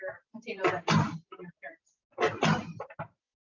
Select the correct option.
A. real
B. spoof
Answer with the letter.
A